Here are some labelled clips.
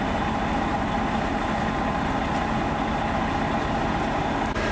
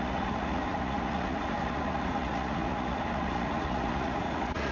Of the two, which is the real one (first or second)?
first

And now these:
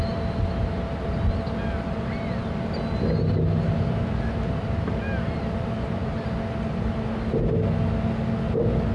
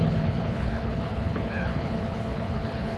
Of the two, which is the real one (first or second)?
first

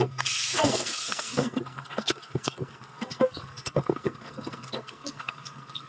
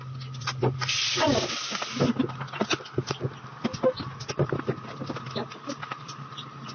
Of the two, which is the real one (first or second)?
second